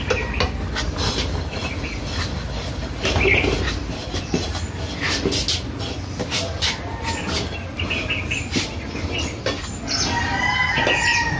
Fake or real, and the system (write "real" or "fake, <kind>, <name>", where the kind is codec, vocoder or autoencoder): real